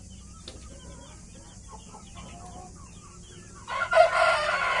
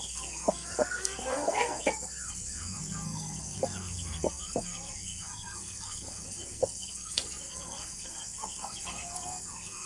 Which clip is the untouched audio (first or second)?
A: first